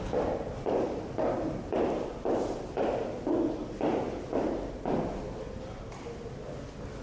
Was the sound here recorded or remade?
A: recorded